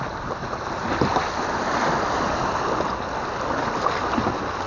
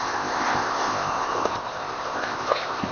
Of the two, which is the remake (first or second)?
second